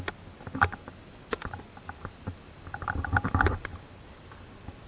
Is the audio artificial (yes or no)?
no